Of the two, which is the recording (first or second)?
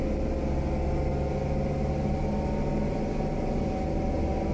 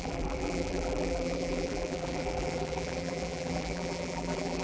first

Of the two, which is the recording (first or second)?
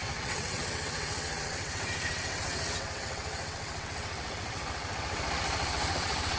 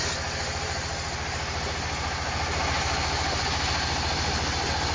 second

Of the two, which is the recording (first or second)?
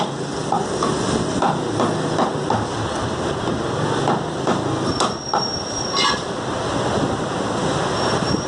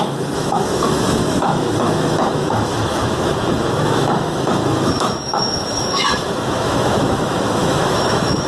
first